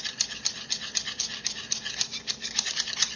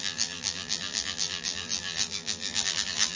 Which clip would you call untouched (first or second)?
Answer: first